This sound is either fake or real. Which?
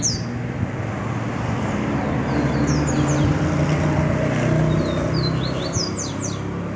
real